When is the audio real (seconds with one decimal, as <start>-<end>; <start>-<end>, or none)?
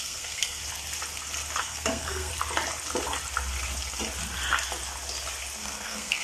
0.6-1.6; 2.3-5.6